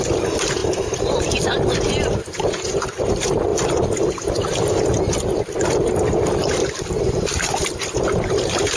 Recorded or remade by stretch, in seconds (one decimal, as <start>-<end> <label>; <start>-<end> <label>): 0.0-3.5 remade; 3.5-7.0 recorded; 7.0-8.8 remade